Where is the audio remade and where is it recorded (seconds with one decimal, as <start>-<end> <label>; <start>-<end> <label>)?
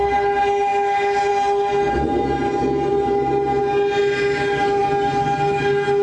0.0-6.0 recorded